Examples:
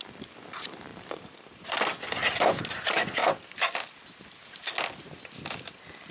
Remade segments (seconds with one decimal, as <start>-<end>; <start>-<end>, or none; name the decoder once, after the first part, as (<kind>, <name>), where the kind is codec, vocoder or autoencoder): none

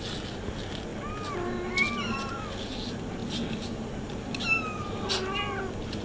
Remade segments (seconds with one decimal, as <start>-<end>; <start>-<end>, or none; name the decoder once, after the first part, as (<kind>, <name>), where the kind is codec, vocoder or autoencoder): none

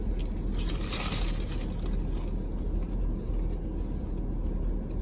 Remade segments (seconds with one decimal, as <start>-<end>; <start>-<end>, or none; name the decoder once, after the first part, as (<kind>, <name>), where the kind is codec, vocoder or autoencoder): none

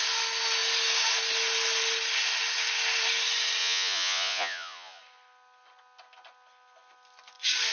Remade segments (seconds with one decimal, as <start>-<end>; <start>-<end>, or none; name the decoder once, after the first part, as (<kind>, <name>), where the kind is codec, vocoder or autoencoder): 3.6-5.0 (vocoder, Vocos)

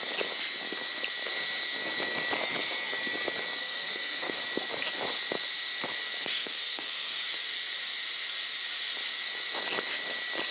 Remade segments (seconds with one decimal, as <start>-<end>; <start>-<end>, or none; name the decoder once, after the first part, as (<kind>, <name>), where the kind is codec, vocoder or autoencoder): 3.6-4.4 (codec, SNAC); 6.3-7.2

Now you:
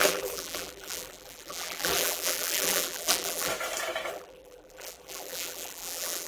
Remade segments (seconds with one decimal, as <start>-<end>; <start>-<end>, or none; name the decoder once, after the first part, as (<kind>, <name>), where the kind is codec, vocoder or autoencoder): 0.0-3.5 (vocoder, BigVGAN v2); 4.1-6.3

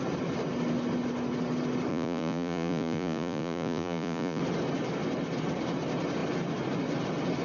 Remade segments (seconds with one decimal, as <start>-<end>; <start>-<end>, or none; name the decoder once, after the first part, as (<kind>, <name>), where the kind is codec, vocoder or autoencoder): 1.9-4.4 (vocoder, Vocos)